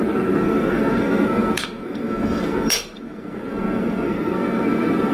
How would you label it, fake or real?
fake